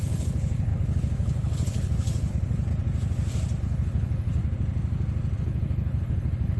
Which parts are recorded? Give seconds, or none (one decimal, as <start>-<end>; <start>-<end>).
2.7-3.6; 4.4-5.4